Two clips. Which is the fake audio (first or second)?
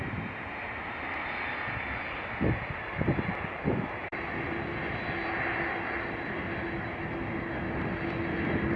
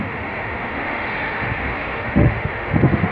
second